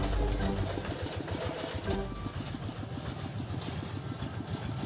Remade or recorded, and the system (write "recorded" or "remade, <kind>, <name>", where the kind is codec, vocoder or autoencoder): recorded